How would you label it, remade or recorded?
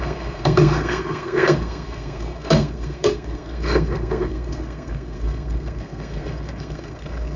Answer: remade